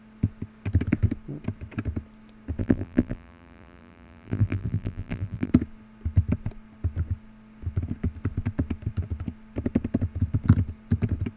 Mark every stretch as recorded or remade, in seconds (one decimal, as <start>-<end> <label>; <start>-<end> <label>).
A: 0.0-2.6 recorded; 2.6-5.5 remade; 5.5-11.4 recorded